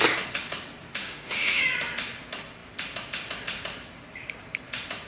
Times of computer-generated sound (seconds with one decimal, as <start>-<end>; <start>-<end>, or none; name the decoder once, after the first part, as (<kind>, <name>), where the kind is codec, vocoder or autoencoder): 1.0-1.6 (autoencoder, DAC-VAE)